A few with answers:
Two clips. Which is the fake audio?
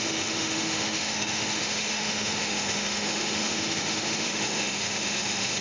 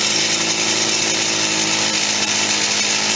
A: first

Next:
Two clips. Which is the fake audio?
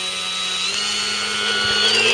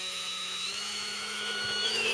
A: second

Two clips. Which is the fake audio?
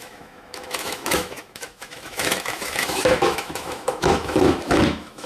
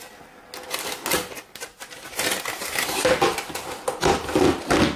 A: first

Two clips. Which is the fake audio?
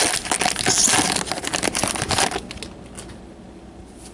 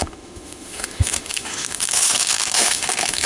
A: second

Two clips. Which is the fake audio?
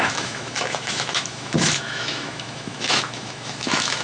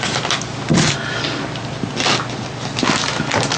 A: first